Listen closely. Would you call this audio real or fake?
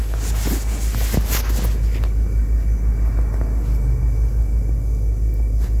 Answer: real